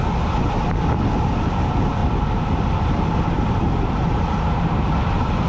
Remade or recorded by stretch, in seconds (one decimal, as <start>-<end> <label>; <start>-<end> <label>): 0.0-5.5 recorded